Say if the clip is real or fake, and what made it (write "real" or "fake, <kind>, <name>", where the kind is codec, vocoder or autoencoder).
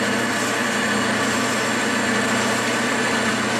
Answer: real